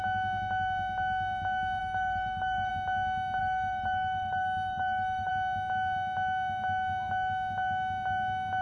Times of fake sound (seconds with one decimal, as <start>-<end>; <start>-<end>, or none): 1.8-2.7; 3.4-5.3